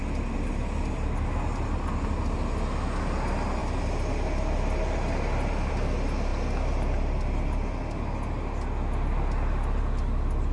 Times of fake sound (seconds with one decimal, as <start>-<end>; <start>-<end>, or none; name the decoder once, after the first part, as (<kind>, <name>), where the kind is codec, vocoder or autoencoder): none